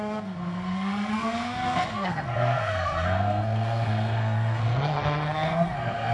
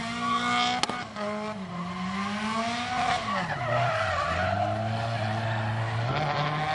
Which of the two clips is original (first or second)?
second